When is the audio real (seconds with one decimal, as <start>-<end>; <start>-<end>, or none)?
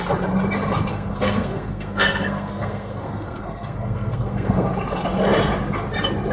0.0-0.9; 4.7-6.3